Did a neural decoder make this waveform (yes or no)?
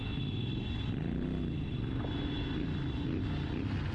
no